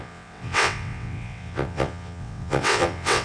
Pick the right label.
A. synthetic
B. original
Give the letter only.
A